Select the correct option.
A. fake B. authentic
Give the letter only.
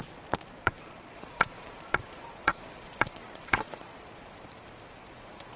A